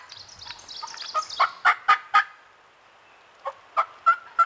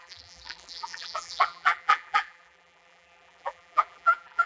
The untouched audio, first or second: first